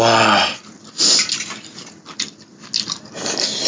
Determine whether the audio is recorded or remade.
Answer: recorded